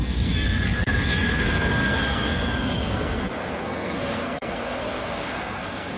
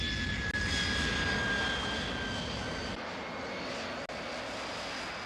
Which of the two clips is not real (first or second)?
first